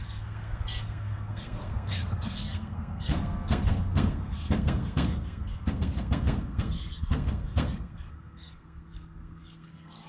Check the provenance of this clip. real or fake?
fake